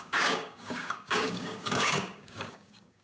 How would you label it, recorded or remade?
remade